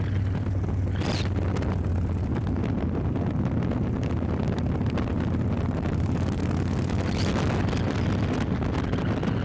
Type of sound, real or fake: real